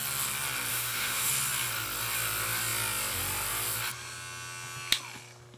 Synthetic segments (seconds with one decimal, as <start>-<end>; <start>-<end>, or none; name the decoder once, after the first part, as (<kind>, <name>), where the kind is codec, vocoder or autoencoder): 0.7-1.3 (autoencoder, DAC-VAE)